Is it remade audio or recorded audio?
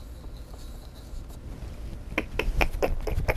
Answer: recorded